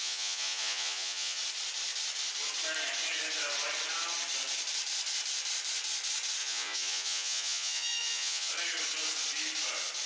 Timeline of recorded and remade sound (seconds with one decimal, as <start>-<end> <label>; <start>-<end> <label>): 0.0-1.4 remade; 1.4-6.4 recorded; 6.4-8.5 remade; 8.5-10.1 recorded